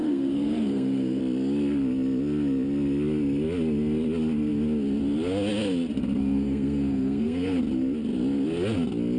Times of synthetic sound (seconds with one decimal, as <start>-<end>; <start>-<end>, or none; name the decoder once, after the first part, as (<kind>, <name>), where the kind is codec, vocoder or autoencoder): 0.0-1.2 (codec, SNAC); 6.2-7.6